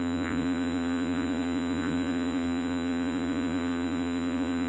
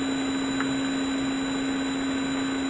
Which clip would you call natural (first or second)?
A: second